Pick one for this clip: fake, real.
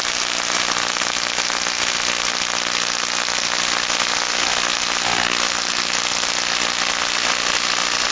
real